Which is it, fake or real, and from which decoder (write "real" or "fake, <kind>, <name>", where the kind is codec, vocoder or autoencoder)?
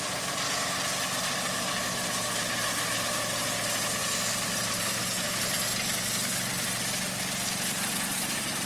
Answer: real